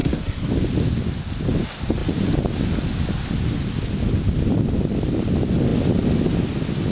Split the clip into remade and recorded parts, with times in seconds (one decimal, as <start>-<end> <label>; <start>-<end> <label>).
0.0-0.5 remade; 0.5-6.9 recorded